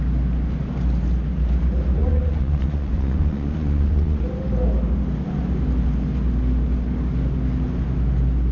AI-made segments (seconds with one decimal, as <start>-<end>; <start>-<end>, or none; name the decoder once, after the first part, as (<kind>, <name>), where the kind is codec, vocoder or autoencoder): 2.0-4.2 (vocoder, Vocos)